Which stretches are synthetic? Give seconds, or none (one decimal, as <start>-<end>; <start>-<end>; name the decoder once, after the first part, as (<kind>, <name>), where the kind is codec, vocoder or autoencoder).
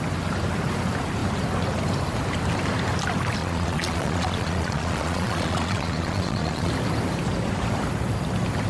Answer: 3.4-6.7 (vocoder, Vocos)